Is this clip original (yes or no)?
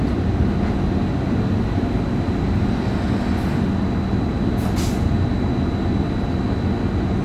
yes